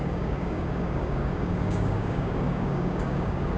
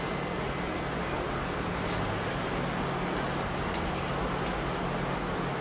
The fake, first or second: first